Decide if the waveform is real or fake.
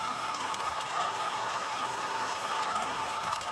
fake